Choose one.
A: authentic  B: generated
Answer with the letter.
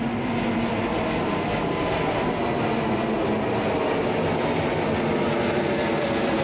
A